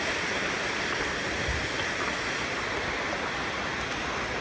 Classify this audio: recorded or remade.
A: remade